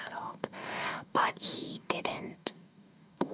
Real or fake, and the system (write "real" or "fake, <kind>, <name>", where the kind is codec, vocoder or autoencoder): fake, codec, DAC